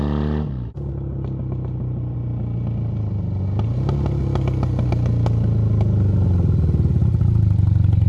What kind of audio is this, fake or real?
real